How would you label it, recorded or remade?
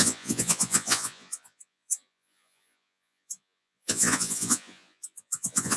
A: remade